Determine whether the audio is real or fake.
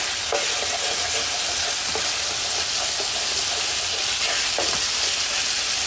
real